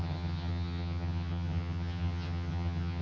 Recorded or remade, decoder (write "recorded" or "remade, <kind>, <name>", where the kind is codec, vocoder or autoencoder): remade, vocoder, HiFi-GAN